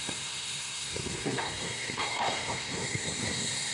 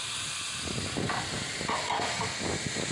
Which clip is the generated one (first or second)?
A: first